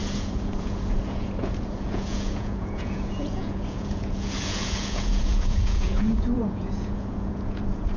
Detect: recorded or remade remade